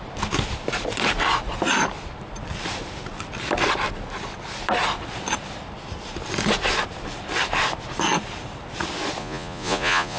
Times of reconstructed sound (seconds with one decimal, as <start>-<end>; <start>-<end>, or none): 9.2-10.2